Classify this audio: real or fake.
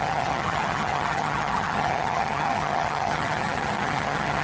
fake